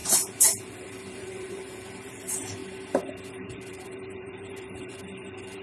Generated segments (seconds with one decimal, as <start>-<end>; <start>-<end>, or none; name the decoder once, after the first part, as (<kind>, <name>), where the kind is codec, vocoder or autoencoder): 0.0-2.6 (vocoder, BigVGAN v2); 3.3-5.6